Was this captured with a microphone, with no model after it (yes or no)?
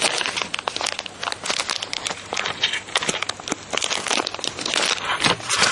yes